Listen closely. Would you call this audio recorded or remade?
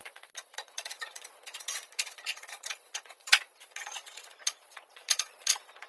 remade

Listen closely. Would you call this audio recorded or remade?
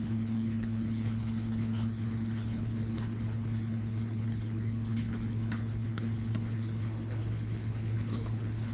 remade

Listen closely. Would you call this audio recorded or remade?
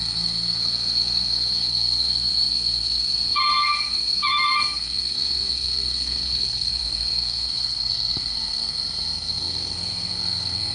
remade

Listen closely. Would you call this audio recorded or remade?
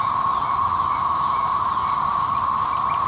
recorded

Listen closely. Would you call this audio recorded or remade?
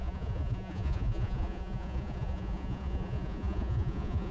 remade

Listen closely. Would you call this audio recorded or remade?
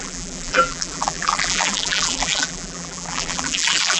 remade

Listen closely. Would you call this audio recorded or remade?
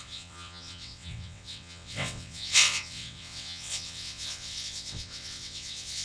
remade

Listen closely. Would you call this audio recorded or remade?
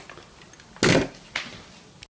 recorded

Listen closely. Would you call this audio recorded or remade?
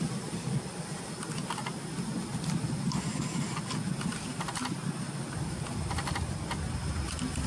recorded